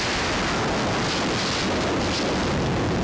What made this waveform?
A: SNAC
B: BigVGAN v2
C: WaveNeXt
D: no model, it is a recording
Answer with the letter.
D